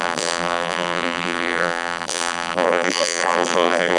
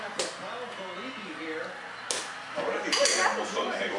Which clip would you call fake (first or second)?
first